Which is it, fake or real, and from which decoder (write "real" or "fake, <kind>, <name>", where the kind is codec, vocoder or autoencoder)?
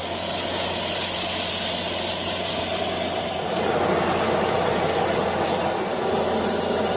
real